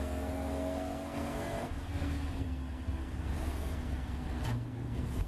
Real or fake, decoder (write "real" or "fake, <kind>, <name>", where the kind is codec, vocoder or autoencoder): fake, codec, SNAC